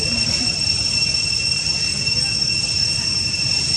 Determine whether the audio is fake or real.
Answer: real